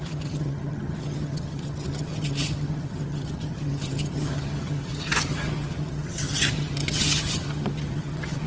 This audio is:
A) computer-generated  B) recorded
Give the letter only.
A